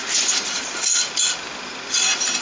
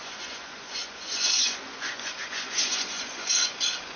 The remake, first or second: second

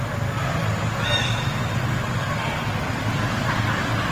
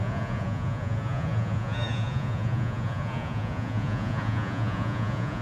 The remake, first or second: second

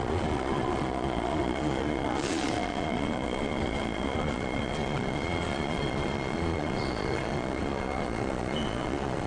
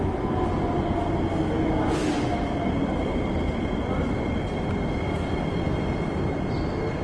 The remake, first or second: first